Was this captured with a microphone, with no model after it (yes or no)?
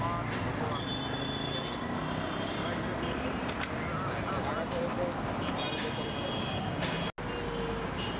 yes